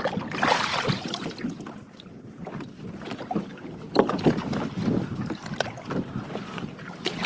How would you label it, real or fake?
real